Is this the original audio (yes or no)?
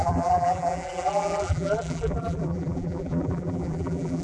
no